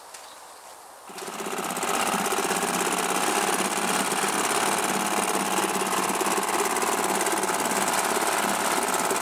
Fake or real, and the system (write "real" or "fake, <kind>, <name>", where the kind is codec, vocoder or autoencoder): real